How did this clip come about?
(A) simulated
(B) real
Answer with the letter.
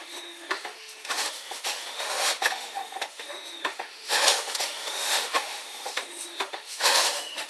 A